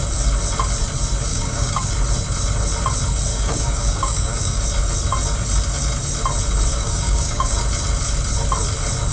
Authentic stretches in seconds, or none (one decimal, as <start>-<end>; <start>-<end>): 0.0-1.3; 1.9-3.3; 4.6-6.7; 7.6-9.1